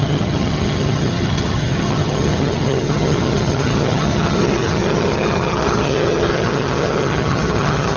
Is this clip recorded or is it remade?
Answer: remade